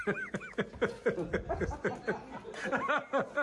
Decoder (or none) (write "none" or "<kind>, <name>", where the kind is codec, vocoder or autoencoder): none